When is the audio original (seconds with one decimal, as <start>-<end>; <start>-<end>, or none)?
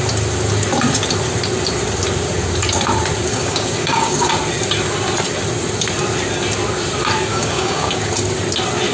0.0-3.3; 4.3-7.3; 8.1-8.9